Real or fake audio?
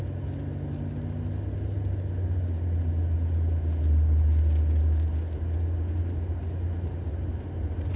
real